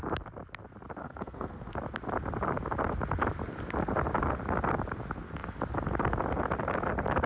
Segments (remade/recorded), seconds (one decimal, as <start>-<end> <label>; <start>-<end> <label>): 0.0-1.0 recorded; 1.0-1.7 remade; 1.7-7.3 recorded